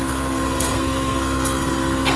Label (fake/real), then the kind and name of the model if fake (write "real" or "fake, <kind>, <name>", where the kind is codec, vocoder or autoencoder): fake, codec, SNAC